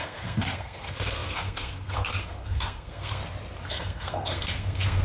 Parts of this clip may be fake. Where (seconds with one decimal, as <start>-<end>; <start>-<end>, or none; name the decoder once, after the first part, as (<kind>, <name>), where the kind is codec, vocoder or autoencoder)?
0.0-3.2 (codec, SNAC); 3.7-5.0